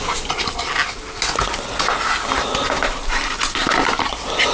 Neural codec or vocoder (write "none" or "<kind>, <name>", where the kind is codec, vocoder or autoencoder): none